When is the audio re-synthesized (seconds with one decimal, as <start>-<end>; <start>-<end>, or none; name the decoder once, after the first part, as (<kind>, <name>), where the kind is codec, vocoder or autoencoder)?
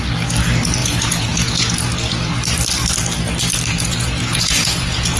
0.8-1.7 (vocoder, Vocos); 3.7-5.2